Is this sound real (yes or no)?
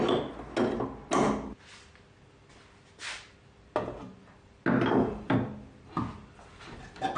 yes